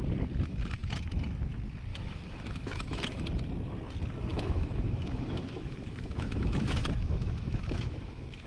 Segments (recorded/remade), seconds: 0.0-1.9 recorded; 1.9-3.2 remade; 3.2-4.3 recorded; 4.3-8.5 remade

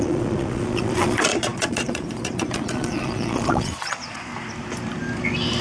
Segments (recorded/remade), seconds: 0.0-4.3 remade; 4.3-5.6 recorded

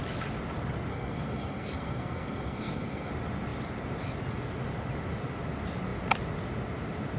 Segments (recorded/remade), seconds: 0.0-0.9 recorded; 0.9-3.1 remade; 3.1-7.2 recorded

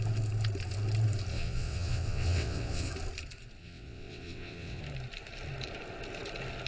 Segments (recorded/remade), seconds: 0.0-1.3 recorded; 1.3-2.9 remade; 2.9-3.6 recorded; 3.6-4.8 remade; 4.8-6.7 recorded